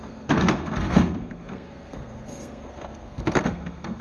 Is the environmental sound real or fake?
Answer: fake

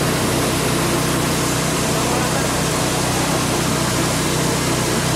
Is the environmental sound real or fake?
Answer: real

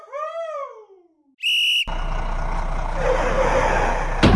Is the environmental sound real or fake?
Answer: real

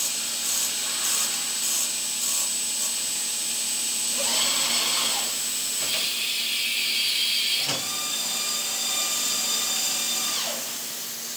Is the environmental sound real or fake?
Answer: real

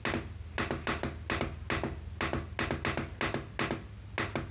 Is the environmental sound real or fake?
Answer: real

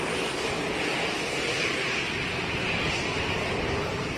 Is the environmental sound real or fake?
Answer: real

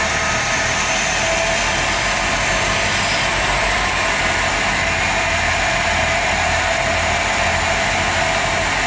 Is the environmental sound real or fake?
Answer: real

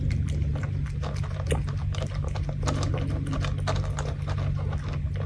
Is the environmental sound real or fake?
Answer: real